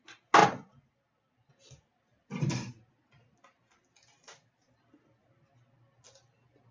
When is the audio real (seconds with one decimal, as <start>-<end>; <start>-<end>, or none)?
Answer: 0.0-0.4; 1.5-1.9; 2.7-6.7

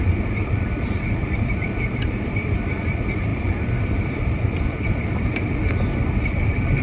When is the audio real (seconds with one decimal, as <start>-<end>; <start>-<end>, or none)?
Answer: none

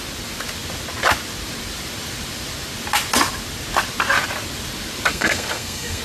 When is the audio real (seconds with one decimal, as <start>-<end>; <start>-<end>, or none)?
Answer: 0.0-5.1